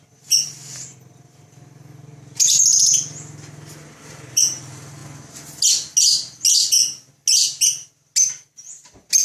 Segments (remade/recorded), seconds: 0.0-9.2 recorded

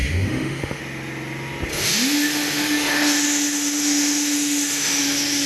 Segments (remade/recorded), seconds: 0.0-0.8 remade; 0.8-1.7 recorded; 1.7-5.0 remade; 5.0-5.5 recorded

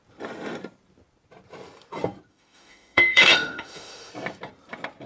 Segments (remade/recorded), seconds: 0.0-2.3 recorded; 2.3-4.1 remade; 4.1-5.1 recorded